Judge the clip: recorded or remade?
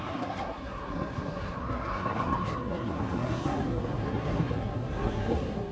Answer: remade